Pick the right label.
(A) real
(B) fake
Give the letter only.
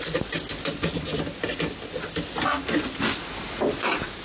A